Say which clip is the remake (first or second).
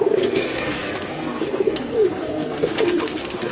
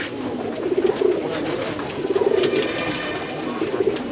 first